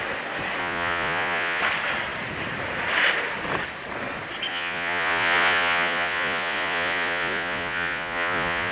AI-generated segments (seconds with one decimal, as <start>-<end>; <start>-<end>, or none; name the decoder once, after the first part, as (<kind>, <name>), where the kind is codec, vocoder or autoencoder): 0.6-1.6 (vocoder, Vocos); 4.5-8.7